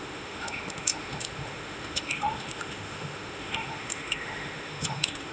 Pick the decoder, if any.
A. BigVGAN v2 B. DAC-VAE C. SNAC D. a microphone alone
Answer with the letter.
B